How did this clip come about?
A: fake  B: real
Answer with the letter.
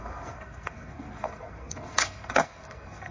A